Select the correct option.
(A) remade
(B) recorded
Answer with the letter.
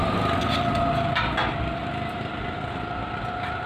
B